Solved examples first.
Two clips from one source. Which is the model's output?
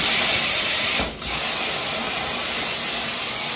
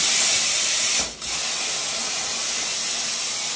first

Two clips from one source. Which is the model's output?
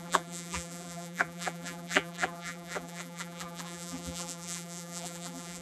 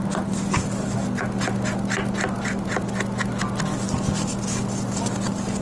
first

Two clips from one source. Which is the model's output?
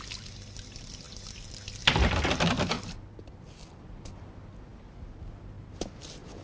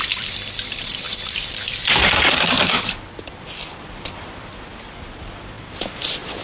second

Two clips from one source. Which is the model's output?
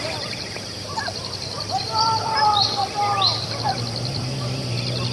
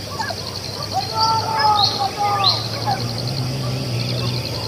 first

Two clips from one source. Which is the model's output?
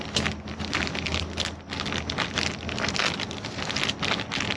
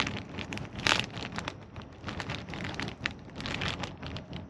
second